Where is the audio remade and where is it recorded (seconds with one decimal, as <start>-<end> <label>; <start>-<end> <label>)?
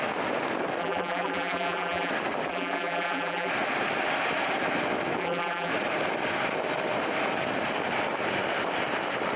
0.0-0.8 recorded; 0.8-2.1 remade; 2.1-2.5 recorded; 2.5-3.5 remade; 3.5-5.2 recorded; 5.2-5.7 remade; 5.7-9.4 recorded